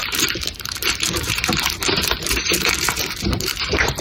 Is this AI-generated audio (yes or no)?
yes